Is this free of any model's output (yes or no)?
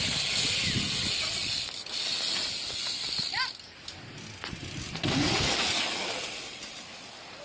yes